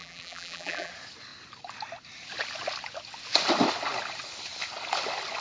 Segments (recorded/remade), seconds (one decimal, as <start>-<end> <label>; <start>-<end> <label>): 0.0-0.9 remade; 0.9-5.4 recorded